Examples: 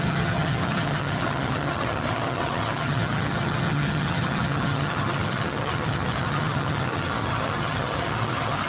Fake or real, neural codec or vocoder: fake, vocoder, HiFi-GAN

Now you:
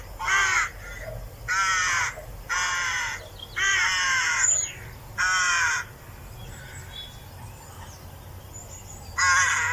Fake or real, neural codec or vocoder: real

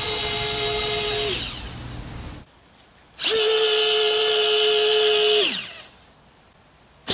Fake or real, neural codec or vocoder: real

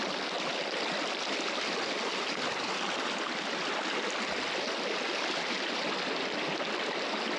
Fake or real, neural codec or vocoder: real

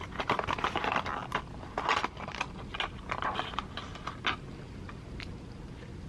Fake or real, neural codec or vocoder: real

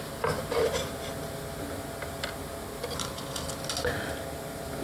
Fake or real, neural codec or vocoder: real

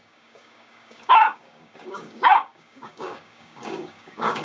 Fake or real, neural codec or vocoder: fake, codec, DAC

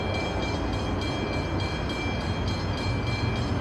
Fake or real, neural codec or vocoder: real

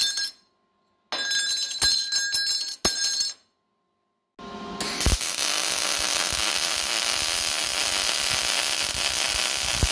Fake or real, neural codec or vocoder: real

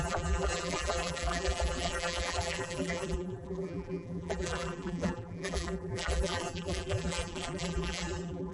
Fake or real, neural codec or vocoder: fake, vocoder, BigVGAN v2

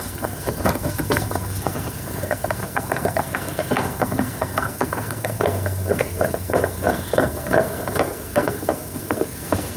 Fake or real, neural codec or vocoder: fake, codec, SNAC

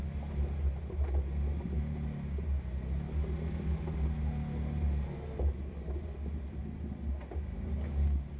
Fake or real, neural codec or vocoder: real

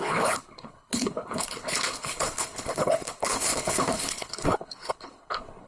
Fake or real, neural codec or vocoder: fake, codec, HILCodec